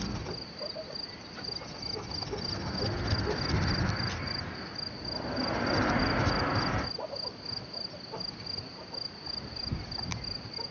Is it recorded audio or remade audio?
recorded